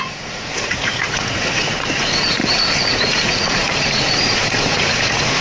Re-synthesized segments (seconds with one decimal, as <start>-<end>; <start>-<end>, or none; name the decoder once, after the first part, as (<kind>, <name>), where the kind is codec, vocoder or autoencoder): 0.0-5.4 (vocoder, Vocos)